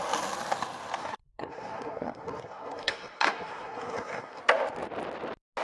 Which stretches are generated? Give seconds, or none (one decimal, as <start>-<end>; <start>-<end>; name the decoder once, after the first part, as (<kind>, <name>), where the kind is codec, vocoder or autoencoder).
1.0-4.4 (codec, SNAC)